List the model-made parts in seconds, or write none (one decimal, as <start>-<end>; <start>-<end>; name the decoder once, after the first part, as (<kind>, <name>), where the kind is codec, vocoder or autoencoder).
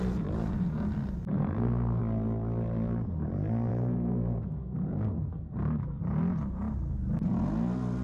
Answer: 1.3-2.0 (codec, SNAC); 3.7-6.0